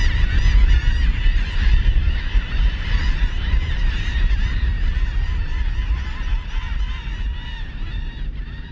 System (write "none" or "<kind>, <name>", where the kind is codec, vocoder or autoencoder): vocoder, BigVGAN v2